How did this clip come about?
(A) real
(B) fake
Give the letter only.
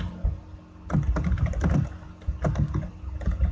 A